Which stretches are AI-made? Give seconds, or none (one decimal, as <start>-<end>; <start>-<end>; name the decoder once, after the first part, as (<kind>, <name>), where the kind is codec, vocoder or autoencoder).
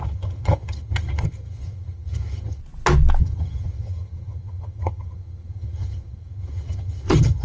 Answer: 0.0-2.6 (vocoder, HiFi-GAN); 3.2-7.4